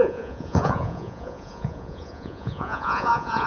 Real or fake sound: fake